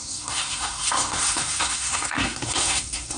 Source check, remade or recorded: remade